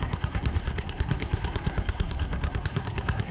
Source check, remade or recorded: remade